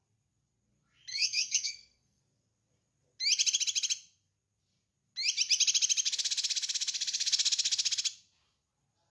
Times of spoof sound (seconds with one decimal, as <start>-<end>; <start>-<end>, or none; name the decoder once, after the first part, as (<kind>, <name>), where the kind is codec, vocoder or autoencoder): 1.1-2.2 (codec, SNAC)